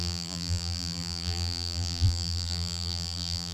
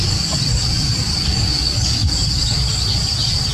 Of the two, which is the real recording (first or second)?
second